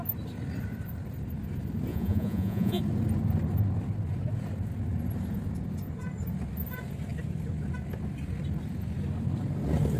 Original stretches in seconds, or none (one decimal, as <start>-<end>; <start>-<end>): 0.0-1.9; 2.8-10.0